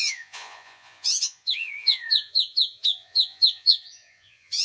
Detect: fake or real fake